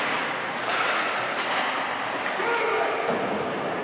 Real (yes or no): yes